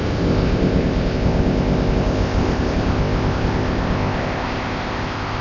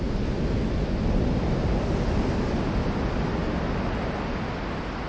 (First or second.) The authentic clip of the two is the second